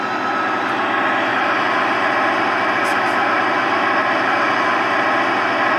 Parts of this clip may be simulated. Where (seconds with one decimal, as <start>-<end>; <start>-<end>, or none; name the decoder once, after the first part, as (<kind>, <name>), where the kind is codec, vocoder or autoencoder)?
1.3-4.8 (vocoder, BigVGAN v2)